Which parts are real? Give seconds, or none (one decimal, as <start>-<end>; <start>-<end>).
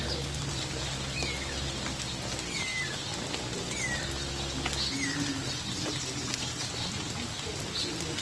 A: 0.0-8.2